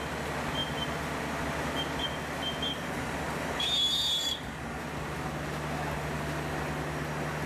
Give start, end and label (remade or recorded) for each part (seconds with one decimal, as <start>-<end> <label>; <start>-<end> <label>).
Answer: 0.0-2.7 recorded; 2.7-4.8 remade; 4.8-7.5 recorded